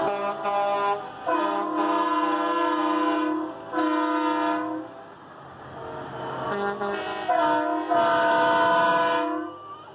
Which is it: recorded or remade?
recorded